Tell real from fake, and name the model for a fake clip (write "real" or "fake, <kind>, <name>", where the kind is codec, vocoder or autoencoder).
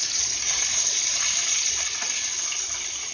real